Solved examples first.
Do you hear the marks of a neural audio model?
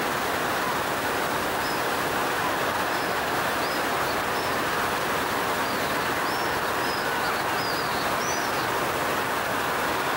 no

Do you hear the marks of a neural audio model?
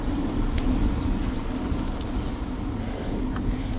no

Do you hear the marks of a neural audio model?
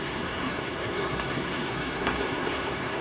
yes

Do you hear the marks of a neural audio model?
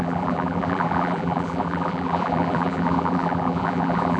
yes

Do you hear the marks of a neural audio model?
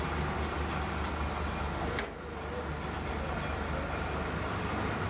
no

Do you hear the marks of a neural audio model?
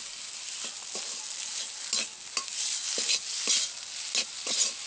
no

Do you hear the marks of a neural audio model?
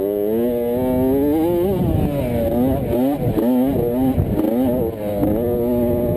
no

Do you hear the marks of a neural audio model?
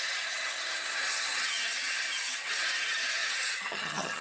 yes